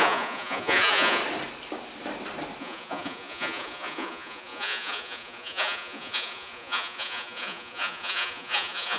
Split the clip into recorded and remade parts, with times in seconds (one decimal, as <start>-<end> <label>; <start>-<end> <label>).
0.0-1.2 remade; 1.2-2.6 recorded; 2.6-9.0 remade